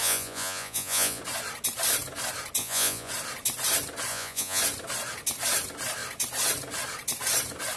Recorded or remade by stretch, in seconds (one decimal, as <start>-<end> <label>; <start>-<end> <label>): 0.0-1.2 remade; 1.2-2.6 recorded; 2.6-3.1 remade; 3.1-4.1 recorded; 4.1-4.6 remade; 4.6-7.8 recorded